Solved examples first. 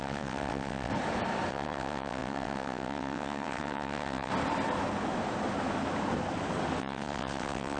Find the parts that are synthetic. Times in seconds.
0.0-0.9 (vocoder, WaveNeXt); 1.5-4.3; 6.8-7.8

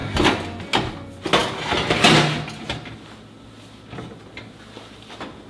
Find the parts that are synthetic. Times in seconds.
none

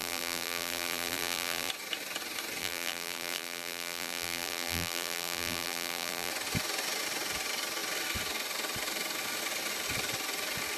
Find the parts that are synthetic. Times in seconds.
0.0-1.7 (vocoder, BigVGAN v2); 2.6-6.3

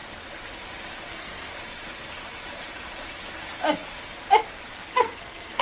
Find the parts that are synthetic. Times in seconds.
1.1-1.5 (codec, SNAC); 4.9-5.6